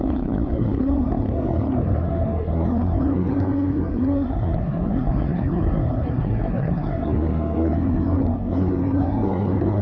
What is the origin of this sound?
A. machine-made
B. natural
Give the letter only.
A